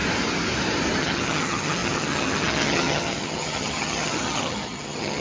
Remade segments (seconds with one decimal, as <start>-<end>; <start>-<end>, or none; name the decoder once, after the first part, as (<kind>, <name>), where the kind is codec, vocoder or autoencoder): 1.0-5.2 (vocoder, HiFi-GAN)